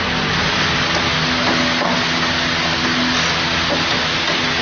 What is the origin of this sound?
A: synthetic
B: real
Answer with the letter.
B